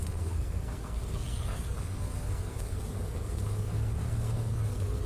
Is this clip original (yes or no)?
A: no